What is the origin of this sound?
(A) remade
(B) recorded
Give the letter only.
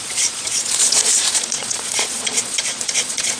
A